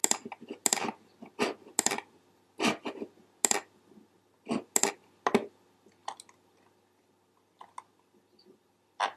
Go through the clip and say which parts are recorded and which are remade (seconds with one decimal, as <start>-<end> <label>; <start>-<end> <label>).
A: 0.0-9.2 recorded